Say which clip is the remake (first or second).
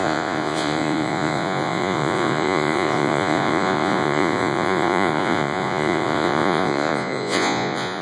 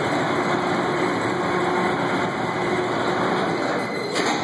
first